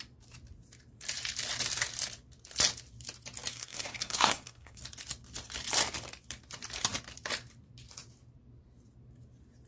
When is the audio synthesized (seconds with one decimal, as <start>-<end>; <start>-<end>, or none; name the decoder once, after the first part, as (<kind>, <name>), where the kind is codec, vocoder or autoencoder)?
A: 3.5-4.8 (codec, SNAC)